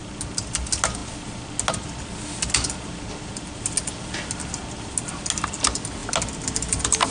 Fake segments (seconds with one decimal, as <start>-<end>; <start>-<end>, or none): none

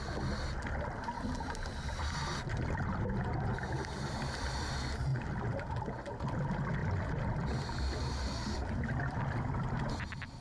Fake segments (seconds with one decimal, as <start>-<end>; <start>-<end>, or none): none